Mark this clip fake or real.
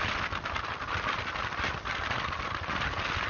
real